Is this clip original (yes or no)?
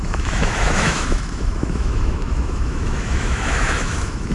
no